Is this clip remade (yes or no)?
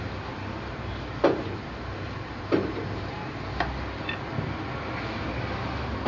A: no